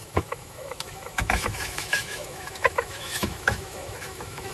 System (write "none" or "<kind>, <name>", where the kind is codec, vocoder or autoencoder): autoencoder, DAC-VAE